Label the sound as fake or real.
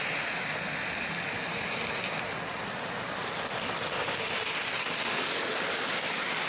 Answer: real